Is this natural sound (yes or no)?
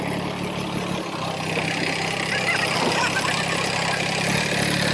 yes